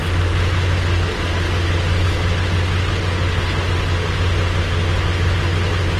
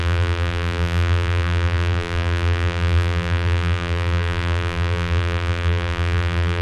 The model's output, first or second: second